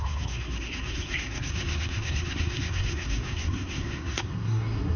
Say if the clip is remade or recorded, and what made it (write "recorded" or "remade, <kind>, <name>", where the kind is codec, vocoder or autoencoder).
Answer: remade, codec, SNAC